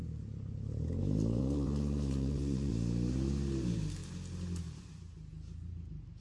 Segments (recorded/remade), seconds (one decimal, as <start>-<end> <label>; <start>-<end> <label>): 0.0-1.4 recorded; 1.4-2.7 remade; 2.7-6.2 recorded